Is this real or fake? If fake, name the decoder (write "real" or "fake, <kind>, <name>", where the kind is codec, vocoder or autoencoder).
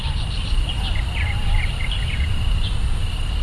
real